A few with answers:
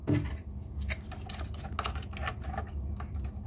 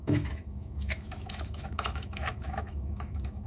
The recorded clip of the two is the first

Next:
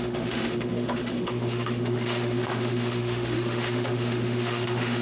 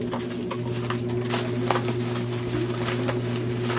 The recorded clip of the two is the second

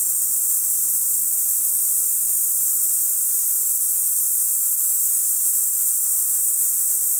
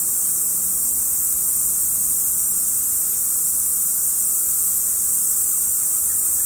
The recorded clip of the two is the second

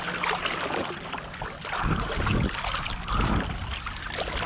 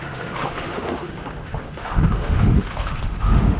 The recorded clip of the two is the first